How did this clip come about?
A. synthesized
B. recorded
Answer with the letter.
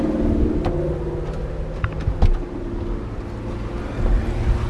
B